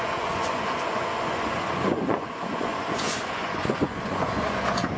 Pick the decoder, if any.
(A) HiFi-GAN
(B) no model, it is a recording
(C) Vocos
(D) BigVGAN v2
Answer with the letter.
C